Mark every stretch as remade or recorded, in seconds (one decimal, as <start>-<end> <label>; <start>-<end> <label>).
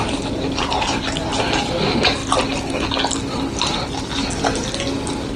0.0-5.4 recorded